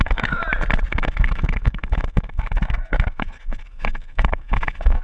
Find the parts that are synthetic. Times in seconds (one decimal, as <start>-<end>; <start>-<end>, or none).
0.0-0.4; 0.9-5.0